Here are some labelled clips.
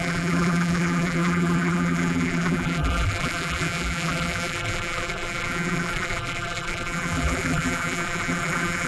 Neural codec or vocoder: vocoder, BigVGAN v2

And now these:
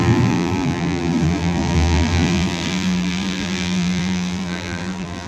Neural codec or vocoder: vocoder, BigVGAN v2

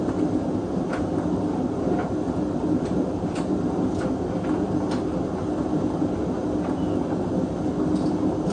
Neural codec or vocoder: none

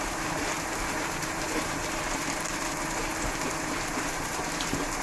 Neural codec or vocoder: vocoder, BigVGAN v2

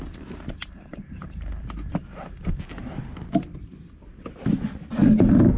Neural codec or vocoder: none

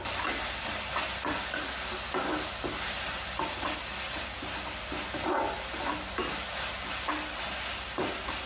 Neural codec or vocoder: none